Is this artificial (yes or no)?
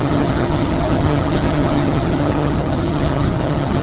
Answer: yes